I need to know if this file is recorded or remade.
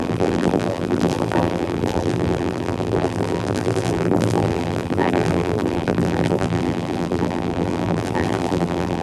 remade